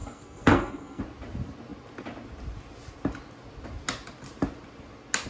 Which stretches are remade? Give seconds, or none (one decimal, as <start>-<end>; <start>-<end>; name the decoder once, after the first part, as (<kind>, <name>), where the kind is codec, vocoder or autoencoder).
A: 0.0-1.0 (codec, SNAC)

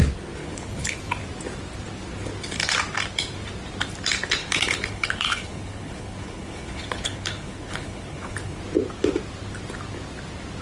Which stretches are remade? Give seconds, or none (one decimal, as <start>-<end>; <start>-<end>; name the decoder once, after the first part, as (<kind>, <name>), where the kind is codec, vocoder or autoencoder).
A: 0.4-1.0 (codec, HILCodec); 4.4-8.6

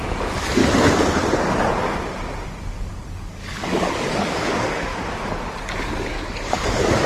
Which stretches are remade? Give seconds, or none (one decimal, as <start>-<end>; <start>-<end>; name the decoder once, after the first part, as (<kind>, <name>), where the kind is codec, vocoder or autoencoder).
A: 0.0-0.6 (codec, DAC); 3.1-4.9; 5.8-7.1

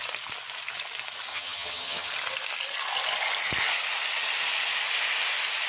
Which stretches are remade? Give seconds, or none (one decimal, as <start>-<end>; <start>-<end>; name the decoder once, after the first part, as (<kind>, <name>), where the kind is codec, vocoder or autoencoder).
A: 1.3-2.1 (vocoder, HiFi-GAN)

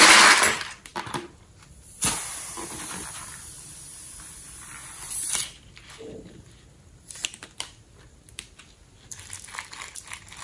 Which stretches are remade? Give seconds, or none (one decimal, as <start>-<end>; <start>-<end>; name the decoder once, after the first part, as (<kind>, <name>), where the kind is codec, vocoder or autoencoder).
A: 0.9-1.4 (vocoder, BigVGAN v2)

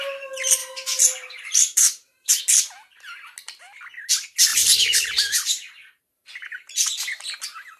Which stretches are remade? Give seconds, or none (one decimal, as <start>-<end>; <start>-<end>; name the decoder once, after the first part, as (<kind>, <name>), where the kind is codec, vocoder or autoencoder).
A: 0.6-2.4 (vocoder, BigVGAN v2); 4.5-6.0